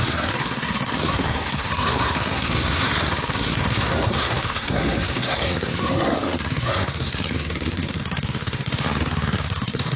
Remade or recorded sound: remade